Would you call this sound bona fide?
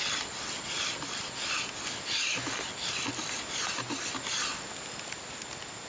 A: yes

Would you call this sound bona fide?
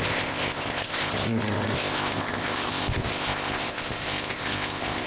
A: no